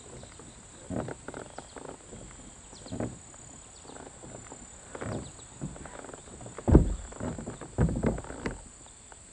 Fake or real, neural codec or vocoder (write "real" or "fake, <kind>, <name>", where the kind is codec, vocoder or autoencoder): real